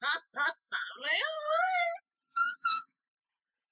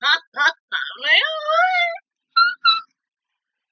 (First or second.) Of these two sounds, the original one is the second